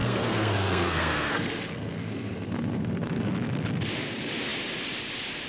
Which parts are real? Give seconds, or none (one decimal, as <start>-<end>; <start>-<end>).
3.3-5.5